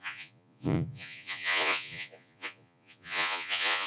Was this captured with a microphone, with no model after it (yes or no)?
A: no